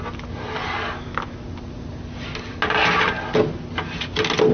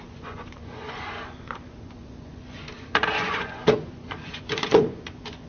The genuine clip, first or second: first